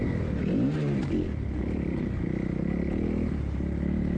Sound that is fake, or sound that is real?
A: real